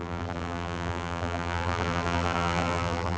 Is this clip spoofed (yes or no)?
yes